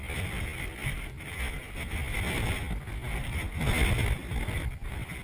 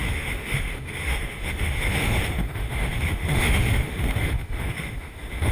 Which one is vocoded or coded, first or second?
second